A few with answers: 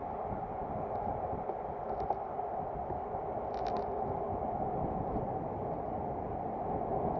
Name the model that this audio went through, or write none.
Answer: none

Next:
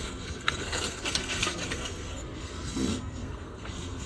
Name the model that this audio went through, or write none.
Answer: codec, SNAC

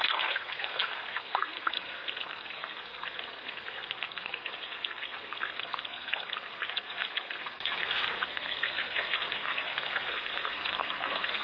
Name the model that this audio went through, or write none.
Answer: codec, SNAC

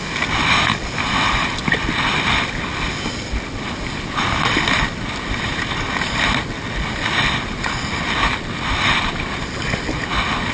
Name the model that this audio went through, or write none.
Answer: none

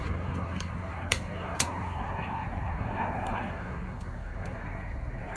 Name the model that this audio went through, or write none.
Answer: codec, SNAC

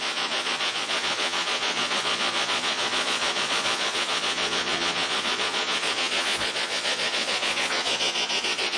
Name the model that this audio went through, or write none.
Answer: vocoder, Vocos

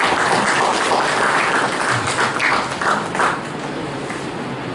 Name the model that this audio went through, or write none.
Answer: none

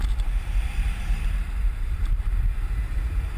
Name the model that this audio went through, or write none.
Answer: vocoder, BigVGAN v2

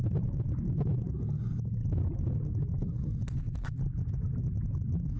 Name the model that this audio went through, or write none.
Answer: none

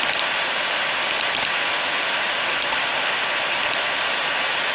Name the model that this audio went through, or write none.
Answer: none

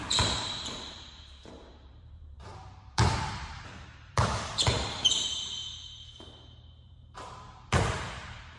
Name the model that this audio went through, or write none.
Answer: vocoder, BigVGAN v2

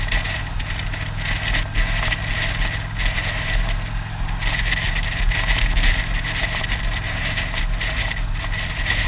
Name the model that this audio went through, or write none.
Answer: none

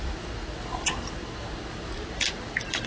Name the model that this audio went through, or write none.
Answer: none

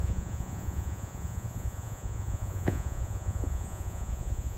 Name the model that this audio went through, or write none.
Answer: vocoder, Vocos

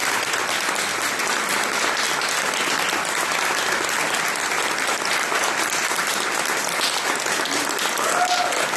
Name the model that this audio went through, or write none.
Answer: none